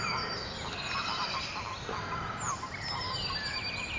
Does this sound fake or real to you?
real